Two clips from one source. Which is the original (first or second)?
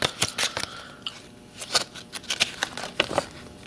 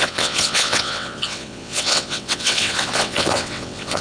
first